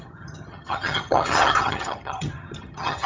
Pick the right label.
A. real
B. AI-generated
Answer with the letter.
B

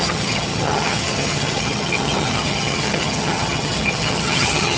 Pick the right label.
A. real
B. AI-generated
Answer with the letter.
B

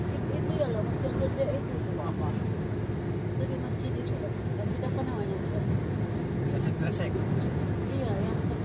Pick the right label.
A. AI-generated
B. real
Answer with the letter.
B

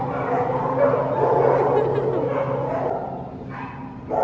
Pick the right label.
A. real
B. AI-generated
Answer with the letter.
A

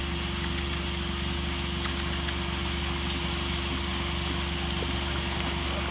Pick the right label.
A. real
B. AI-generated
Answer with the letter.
A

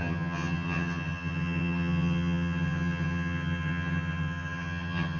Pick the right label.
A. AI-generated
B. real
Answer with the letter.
A